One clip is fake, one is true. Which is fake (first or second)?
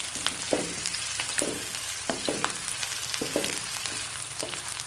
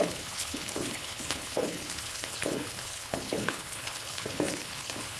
second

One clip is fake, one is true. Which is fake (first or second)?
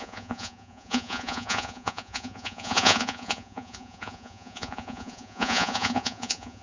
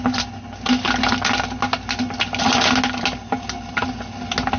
first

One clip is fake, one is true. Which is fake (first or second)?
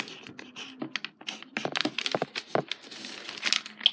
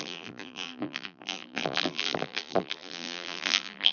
second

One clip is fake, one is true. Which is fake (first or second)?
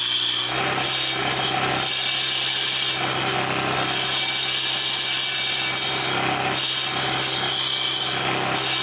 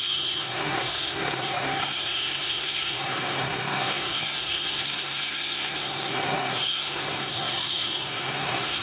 second